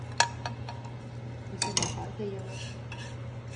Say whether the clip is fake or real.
real